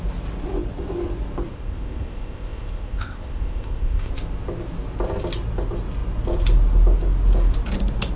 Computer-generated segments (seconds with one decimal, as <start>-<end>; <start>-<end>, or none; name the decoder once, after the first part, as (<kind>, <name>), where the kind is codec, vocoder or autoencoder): 1.5-4.1 (codec, ZipCodec)